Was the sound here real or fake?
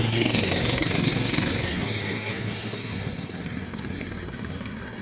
fake